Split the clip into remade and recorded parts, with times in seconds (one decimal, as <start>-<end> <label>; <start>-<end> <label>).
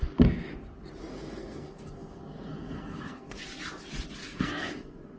0.0-1.1 recorded; 1.1-3.4 remade; 3.4-4.2 recorded; 4.2-5.2 remade